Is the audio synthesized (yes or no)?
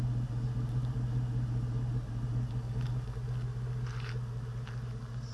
no